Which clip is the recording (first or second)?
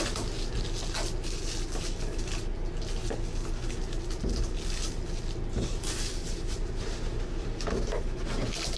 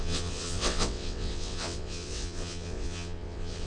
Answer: first